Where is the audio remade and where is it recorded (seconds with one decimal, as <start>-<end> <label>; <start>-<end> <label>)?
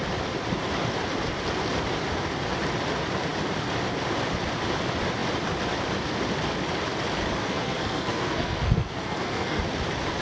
0.0-7.4 recorded; 7.4-9.6 remade; 9.6-10.2 recorded